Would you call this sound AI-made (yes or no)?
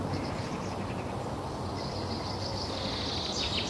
no